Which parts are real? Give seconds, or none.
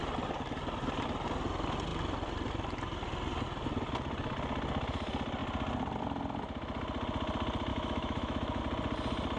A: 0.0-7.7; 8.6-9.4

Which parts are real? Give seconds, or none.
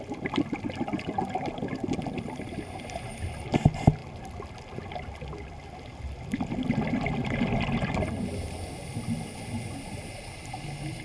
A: 0.0-11.0